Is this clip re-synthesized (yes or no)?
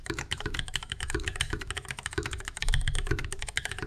yes